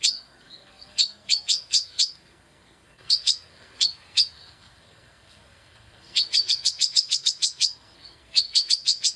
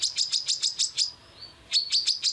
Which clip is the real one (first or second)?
second